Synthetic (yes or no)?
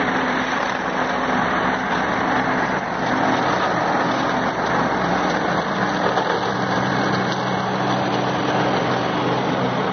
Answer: no